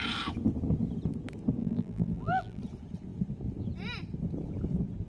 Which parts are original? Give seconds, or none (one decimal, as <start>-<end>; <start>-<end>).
0.0-1.6; 2.6-5.1